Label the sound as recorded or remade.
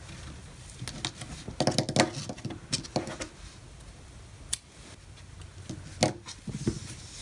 recorded